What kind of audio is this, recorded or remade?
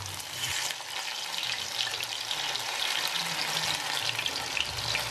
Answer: recorded